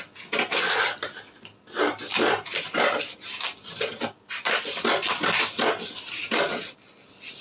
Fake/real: real